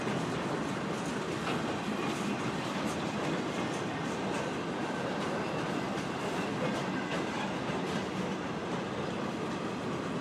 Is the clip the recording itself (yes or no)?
yes